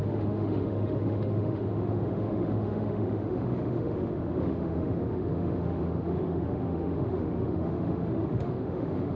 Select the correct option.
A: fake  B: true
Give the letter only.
A